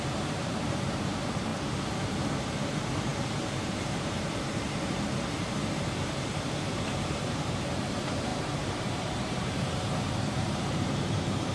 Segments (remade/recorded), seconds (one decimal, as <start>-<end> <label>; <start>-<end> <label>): 0.0-11.5 remade

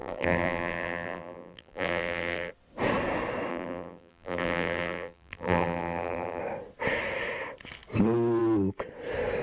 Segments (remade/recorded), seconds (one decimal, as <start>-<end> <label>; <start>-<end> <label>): 0.0-2.5 remade; 2.5-3.5 recorded; 3.5-6.4 remade; 6.4-9.4 recorded